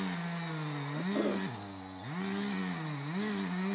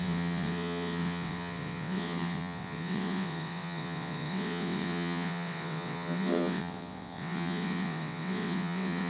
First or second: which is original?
first